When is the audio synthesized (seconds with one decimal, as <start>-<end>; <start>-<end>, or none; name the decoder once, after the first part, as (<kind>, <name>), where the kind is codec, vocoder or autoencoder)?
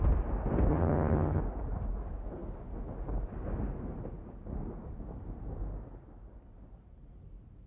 0.7-1.4 (vocoder, HiFi-GAN)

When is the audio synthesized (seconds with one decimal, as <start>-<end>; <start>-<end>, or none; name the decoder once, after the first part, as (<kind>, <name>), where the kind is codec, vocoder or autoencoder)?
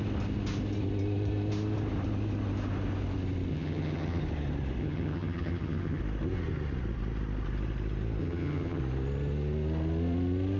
3.5-4.2 (vocoder, HiFi-GAN); 4.8-6.0; 8.2-8.8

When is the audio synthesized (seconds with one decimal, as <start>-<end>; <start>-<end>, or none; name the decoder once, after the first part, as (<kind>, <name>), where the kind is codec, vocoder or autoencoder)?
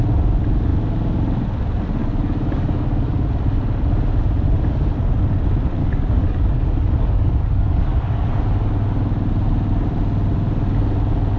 2.0-3.3 (codec, DAC); 5.8-8.4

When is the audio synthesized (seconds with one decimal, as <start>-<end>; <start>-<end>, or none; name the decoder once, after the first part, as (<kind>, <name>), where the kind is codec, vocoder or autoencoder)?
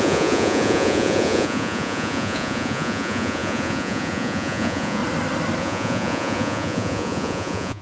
0.0-5.0 (vocoder, Vocos); 5.6-7.8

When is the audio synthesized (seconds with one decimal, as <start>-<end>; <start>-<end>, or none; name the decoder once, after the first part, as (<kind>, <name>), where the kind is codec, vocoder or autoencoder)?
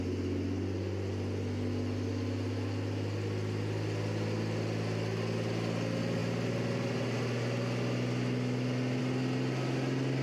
none